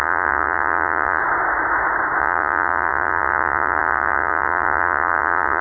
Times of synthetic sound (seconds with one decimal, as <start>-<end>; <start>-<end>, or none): 0.0-1.2; 2.2-5.6